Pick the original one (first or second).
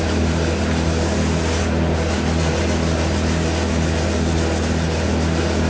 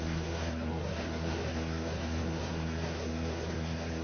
first